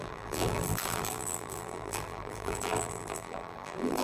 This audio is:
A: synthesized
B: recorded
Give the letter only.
A